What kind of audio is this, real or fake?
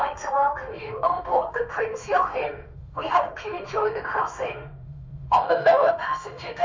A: fake